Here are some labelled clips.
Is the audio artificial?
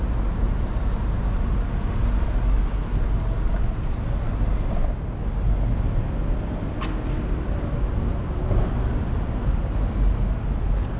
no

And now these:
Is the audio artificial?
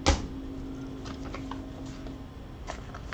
no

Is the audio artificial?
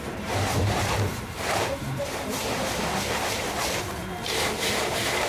yes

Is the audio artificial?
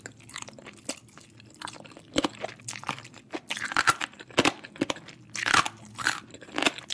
no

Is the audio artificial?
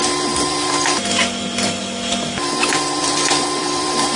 yes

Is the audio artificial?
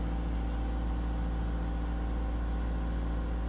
no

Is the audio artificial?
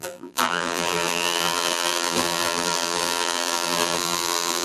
yes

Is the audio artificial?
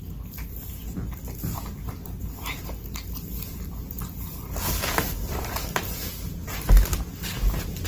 no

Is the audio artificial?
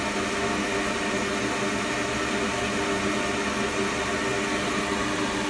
no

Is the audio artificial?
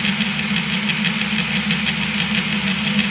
no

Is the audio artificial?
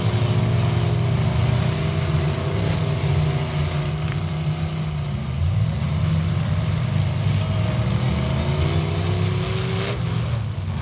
no